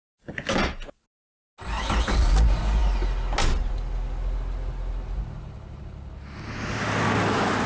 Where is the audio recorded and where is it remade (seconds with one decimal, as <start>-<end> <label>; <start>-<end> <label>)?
0.0-7.7 recorded